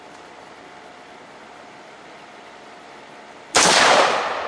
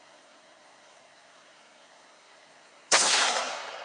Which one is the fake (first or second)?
second